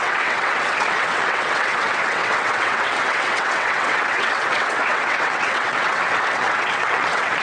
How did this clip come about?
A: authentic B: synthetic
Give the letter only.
B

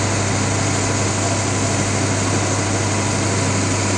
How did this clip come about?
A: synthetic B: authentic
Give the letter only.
B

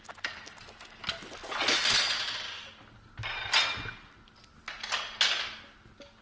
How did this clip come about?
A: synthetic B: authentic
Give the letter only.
B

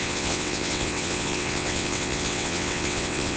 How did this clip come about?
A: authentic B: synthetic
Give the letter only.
B